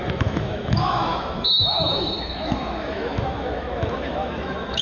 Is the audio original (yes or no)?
no